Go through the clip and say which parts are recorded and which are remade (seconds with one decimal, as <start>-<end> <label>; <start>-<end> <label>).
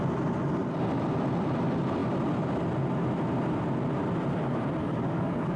0.0-4.8 recorded; 4.8-5.6 remade